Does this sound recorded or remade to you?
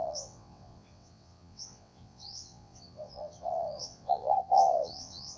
remade